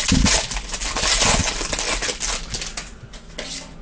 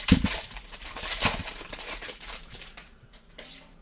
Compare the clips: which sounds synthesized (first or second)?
second